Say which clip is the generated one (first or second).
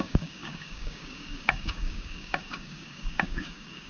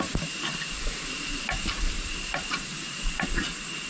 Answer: first